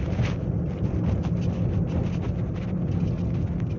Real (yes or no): yes